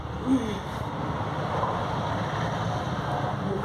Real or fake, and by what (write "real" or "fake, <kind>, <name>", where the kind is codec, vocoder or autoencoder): real